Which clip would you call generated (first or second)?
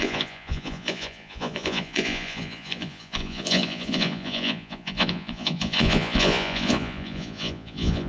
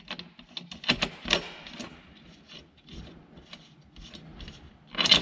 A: first